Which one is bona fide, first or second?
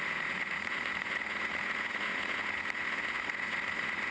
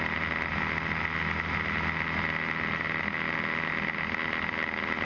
second